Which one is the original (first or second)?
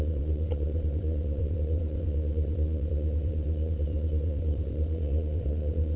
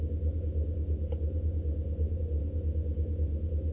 second